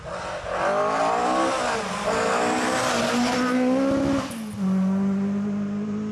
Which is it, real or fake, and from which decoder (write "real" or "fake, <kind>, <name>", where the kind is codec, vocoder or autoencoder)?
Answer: real